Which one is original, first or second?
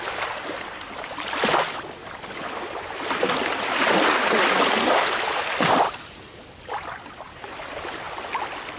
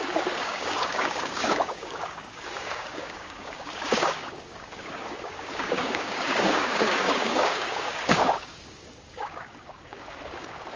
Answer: first